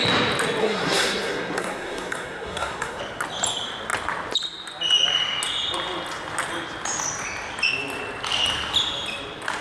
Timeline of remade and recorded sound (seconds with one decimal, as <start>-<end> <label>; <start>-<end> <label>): 0.0-0.6 recorded; 0.6-3.0 remade; 3.0-9.6 recorded